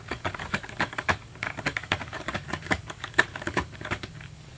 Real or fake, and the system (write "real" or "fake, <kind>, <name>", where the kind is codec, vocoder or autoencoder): fake, codec, DAC